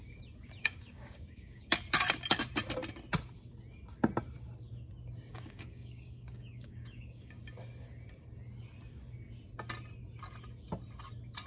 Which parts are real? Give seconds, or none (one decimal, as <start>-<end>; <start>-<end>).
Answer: 0.0-0.6; 1.7-5.3; 7.4-11.5